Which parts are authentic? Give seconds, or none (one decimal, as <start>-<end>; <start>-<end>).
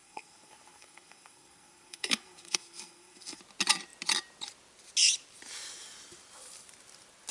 3.4-7.3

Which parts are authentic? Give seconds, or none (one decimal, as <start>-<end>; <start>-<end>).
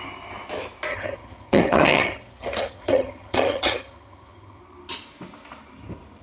0.0-0.9; 4.6-6.2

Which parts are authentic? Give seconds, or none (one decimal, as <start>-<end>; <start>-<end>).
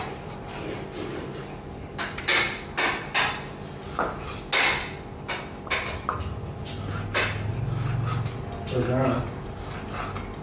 0.0-10.4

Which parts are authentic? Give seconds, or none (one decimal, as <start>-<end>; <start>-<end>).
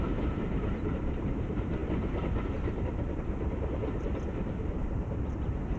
4.1-4.8